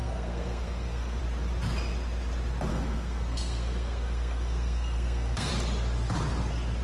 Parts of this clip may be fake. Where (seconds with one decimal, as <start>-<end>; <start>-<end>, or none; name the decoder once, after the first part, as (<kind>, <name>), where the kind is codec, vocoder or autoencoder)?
0.0-1.2 (codec, SNAC); 2.7-5.5

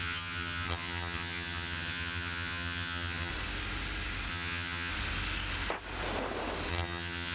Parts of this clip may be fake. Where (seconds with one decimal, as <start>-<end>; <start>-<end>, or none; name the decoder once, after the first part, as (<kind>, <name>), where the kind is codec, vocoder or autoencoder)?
0.0-3.3 (vocoder, HiFi-GAN); 4.3-4.9; 6.7-7.3

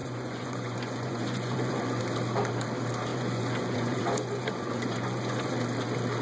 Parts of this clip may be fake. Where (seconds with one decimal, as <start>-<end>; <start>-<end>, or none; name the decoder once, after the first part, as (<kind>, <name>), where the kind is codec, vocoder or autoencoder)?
0.0-2.0 (vocoder, Vocos); 3.1-5.5

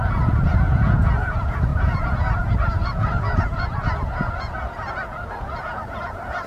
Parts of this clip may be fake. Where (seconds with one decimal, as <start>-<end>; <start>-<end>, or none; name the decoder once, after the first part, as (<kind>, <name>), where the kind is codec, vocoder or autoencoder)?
0.0-6.5 (vocoder, Vocos)

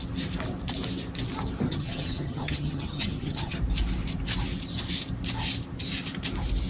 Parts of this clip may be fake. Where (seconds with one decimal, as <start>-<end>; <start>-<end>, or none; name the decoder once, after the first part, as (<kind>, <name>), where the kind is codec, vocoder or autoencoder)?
1.7-3.6 (vocoder, HiFi-GAN)